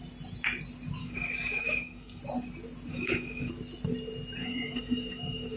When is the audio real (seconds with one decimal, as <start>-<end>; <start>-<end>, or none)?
0.0-1.0; 2.2-2.9; 3.5-4.4